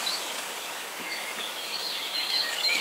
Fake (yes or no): yes